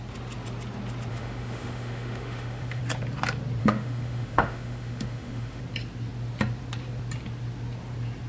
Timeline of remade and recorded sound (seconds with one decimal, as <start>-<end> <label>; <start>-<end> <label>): 0.0-1.1 recorded; 1.1-2.8 remade; 2.8-3.6 recorded; 3.6-5.6 remade; 5.6-8.3 recorded